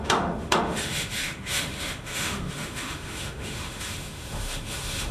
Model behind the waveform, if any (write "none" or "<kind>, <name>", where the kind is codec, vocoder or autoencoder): autoencoder, DAC-VAE